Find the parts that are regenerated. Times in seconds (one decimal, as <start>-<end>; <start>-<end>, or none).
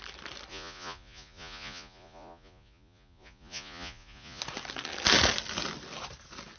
0.5-4.4